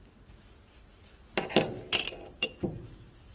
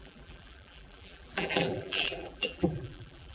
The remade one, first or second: second